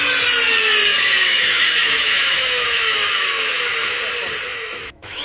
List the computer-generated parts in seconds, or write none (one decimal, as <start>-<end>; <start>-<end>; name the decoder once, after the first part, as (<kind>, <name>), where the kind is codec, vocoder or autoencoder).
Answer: 0.9-4.0 (autoencoder, DAC-VAE); 4.5-5.2

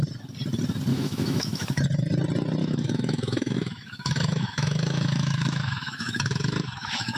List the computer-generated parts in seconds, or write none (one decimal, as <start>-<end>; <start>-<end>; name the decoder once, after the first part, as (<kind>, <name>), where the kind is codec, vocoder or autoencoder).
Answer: 0.9-1.8 (autoencoder, DAC-VAE); 2.6-7.2